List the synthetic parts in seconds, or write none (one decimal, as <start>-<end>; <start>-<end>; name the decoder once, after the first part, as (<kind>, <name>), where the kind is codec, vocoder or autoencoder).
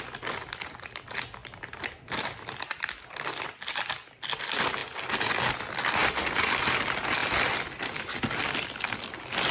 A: 1.4-2.2 (vocoder, BigVGAN v2)